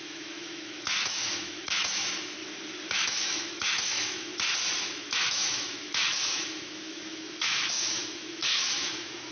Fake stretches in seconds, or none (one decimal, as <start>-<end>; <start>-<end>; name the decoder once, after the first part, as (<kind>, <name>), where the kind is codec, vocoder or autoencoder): 0.0-2.4 (autoencoder, DAC-VAE); 2.9-4.3; 4.9-9.3